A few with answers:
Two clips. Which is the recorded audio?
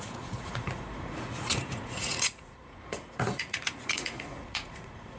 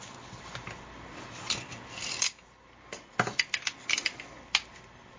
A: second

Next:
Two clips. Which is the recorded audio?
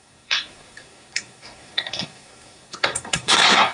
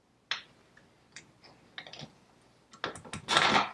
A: second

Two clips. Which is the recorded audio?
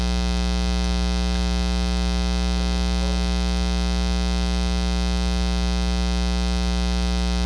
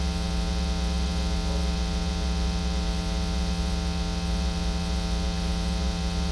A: first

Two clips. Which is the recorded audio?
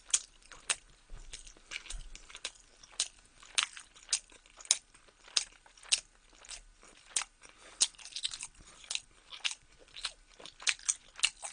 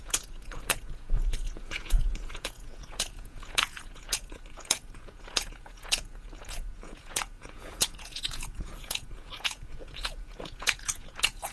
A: first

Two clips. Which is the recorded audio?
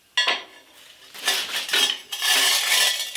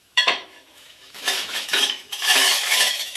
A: first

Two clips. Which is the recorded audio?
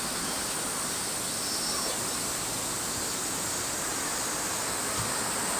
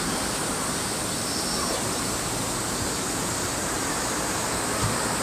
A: first